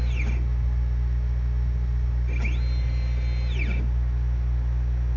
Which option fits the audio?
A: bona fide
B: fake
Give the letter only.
A